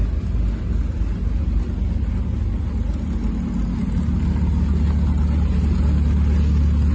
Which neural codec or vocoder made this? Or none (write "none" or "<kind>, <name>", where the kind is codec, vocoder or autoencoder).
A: none